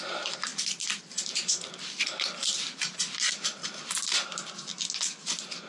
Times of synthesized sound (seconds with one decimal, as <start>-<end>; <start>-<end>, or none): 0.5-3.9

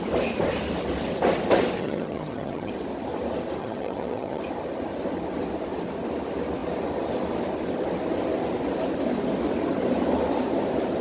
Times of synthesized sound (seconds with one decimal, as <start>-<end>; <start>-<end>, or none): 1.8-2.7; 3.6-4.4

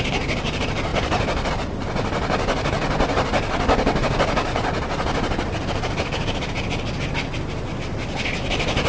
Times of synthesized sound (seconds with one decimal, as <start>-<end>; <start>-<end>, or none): none